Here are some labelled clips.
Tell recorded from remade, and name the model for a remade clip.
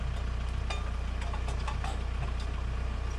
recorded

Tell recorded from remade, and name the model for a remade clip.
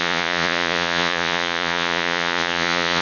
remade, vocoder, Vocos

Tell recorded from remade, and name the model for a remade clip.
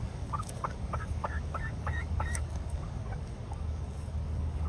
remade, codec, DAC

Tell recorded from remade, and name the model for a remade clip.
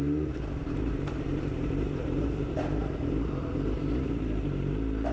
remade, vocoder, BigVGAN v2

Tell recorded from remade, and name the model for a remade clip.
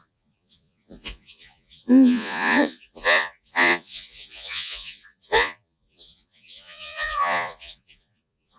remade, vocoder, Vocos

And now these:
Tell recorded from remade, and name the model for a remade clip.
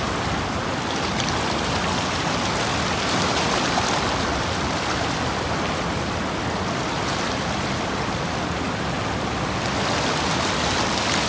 recorded